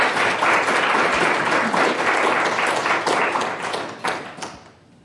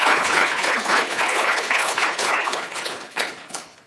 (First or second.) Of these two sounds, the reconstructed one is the second